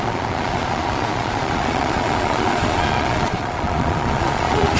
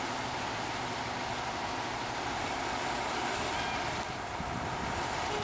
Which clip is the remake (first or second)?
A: first